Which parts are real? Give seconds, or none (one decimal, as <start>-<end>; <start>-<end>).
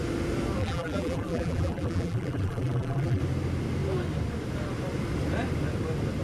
0.0-0.6; 3.2-6.2